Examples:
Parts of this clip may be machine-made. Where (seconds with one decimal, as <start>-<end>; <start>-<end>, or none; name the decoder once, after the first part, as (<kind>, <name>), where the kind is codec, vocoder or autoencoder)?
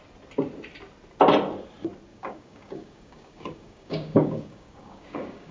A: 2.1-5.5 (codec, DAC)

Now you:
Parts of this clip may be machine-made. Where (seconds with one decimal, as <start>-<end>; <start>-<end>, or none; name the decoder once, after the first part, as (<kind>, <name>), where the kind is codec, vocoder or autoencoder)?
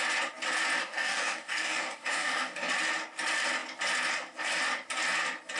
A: 0.8-2.7 (codec, DAC)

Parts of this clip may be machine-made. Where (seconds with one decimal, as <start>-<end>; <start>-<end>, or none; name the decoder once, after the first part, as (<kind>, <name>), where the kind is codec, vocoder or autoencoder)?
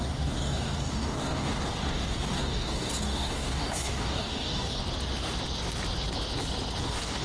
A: 0.0-4.8 (codec, DAC); 6.8-7.2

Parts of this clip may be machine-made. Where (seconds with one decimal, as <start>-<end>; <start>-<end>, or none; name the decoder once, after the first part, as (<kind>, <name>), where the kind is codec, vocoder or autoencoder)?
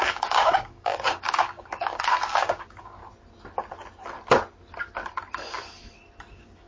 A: 0.0-3.0 (codec, DAC); 6.3-6.7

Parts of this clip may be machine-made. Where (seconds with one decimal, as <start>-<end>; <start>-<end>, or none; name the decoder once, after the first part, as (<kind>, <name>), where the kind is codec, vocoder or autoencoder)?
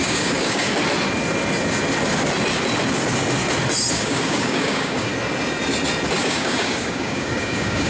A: 0.0-0.7 (codec, DAC); 3.9-5.1; 6.2-7.9